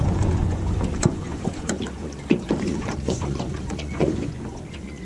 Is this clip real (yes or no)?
no